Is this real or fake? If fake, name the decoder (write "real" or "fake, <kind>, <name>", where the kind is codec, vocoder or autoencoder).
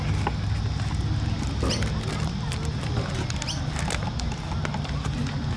real